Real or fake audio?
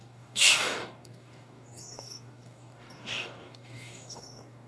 fake